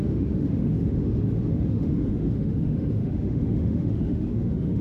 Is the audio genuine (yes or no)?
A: no